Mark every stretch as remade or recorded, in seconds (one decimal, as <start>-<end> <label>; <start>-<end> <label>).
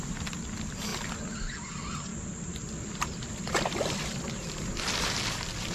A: 0.0-2.1 recorded; 2.1-5.7 remade